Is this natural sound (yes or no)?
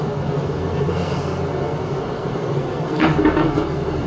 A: no